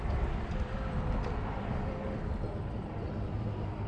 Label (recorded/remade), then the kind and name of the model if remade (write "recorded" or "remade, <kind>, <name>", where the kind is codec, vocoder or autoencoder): recorded